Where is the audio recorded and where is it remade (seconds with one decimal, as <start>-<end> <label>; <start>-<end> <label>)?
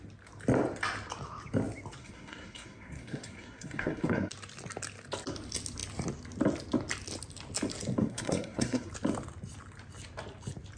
0.0-2.0 recorded; 2.0-4.3 remade; 4.3-8.0 recorded; 8.0-8.9 remade; 8.9-10.8 recorded